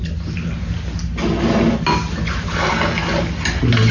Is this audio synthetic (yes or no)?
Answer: no